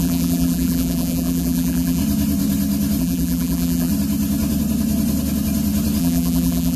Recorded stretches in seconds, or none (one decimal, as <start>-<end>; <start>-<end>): 2.0-3.0; 3.9-6.0